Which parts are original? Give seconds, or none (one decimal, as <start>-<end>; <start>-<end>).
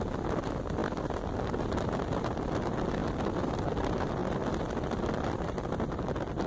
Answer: 0.0-6.5